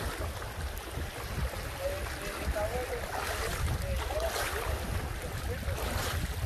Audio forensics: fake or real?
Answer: real